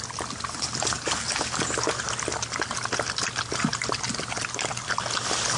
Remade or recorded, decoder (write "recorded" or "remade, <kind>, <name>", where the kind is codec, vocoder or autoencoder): recorded